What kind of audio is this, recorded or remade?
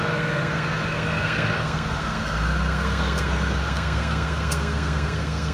remade